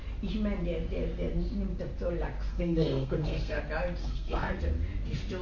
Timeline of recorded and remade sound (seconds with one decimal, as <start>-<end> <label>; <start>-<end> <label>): 0.0-2.5 recorded; 2.5-3.6 remade; 3.6-4.0 recorded; 4.0-4.6 remade; 4.6-5.4 recorded

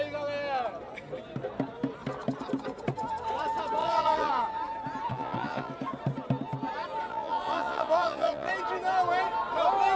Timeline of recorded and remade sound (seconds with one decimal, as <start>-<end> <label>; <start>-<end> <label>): 0.0-3.8 recorded; 3.8-4.3 remade; 4.3-5.1 recorded; 5.1-5.7 remade; 5.7-7.1 recorded; 7.1-8.5 remade; 8.5-10.0 recorded

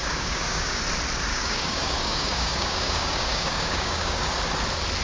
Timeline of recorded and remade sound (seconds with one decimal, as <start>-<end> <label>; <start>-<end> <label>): 0.0-0.8 remade; 0.8-1.3 recorded; 1.3-4.3 remade; 4.3-5.0 recorded

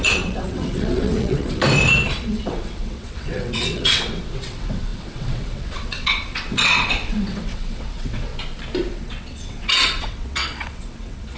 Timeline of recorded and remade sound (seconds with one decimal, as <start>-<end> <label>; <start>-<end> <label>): 0.0-1.6 remade; 1.6-2.2 recorded; 2.2-8.3 remade; 8.3-8.9 recorded; 8.9-11.4 remade

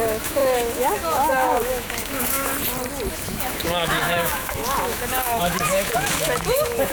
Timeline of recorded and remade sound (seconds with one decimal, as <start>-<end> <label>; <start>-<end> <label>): 0.0-2.5 remade; 2.5-3.1 recorded; 3.1-6.9 remade

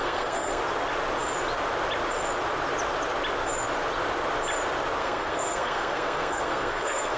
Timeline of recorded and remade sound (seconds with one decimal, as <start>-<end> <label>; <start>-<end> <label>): 0.0-0.6 remade; 0.6-5.0 recorded; 5.0-7.2 remade

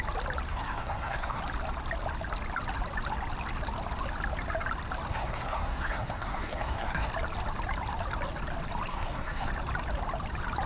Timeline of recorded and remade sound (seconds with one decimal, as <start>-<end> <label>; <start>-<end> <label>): 0.0-0.5 recorded; 0.5-1.4 remade; 1.4-5.1 recorded; 5.1-7.1 remade; 7.1-8.9 recorded; 8.9-9.5 remade; 9.5-10.7 recorded

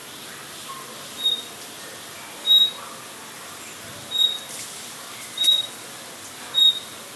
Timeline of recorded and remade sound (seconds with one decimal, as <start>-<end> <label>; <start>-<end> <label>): 0.0-7.2 recorded